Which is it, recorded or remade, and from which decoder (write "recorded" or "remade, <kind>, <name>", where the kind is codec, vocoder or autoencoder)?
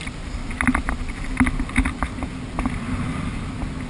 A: recorded